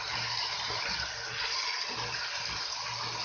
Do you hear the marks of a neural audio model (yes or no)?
no